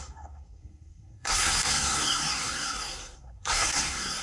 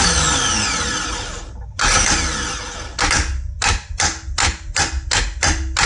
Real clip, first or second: second